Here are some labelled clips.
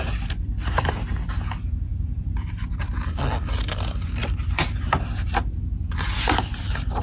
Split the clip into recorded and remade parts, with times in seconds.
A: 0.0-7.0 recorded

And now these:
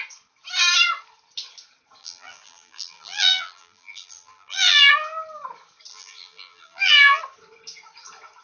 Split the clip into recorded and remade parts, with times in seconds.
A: 0.0-2.0 recorded; 2.0-4.9 remade; 4.9-5.9 recorded; 5.9-7.2 remade; 7.2-8.4 recorded

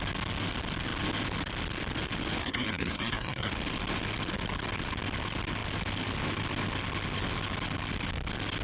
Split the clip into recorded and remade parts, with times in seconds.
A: 0.0-2.4 recorded; 2.4-3.5 remade; 3.5-8.6 recorded

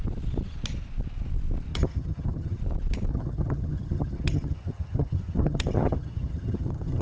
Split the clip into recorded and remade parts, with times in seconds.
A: 0.0-1.7 recorded; 1.7-2.6 remade; 2.6-3.1 recorded; 3.1-7.0 remade

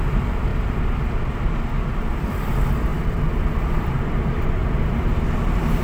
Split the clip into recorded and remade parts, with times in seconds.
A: 0.0-0.5 remade; 0.5-1.9 recorded; 1.9-2.9 remade; 2.9-5.1 recorded; 5.1-5.8 remade

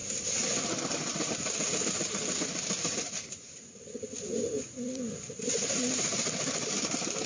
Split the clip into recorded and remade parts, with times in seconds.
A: 0.0-7.3 recorded

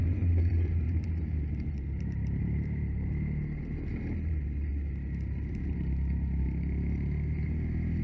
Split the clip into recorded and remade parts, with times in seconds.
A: 0.0-4.7 remade; 4.7-8.0 recorded